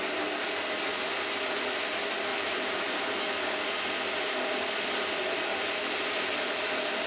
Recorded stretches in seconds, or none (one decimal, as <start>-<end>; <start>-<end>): 0.0-2.3; 3.0-7.1